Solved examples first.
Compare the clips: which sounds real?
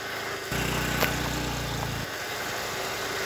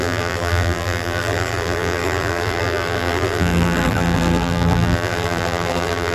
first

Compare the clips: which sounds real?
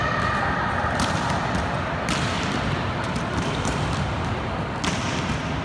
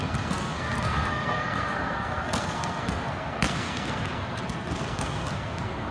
first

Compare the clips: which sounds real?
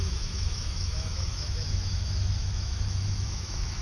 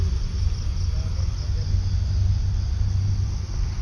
second